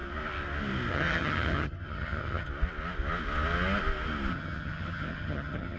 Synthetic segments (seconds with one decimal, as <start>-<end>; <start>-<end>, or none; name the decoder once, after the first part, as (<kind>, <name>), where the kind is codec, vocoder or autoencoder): 0.9-2.5 (vocoder, HiFi-GAN); 4.3-5.8